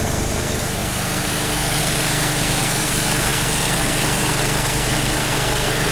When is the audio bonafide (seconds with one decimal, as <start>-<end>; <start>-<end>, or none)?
none